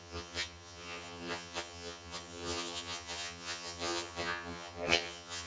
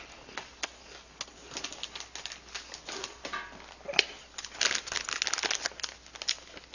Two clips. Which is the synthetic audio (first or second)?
first